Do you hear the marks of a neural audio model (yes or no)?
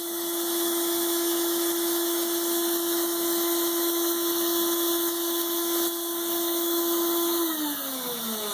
yes